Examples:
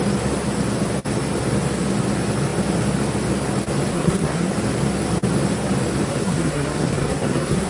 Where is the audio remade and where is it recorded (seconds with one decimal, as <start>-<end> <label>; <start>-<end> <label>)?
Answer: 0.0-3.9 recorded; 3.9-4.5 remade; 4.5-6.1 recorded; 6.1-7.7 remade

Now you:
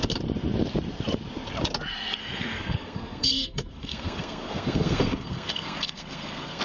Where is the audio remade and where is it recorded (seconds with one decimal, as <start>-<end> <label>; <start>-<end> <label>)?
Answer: 0.0-2.2 recorded; 2.2-6.6 remade

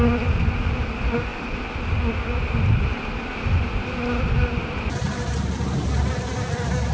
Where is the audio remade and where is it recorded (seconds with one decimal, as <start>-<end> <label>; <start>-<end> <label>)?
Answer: 0.0-6.9 recorded

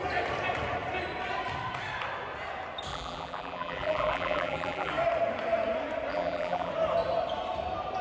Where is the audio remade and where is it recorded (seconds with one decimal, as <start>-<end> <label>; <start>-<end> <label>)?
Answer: 0.0-2.9 recorded; 2.9-4.9 remade; 4.9-6.1 recorded; 6.1-6.7 remade; 6.7-8.0 recorded